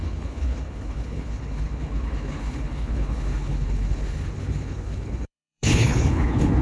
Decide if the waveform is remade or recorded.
remade